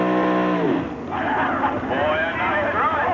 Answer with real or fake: real